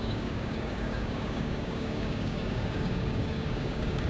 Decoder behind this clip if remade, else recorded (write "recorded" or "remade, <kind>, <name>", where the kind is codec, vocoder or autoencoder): remade, codec, DAC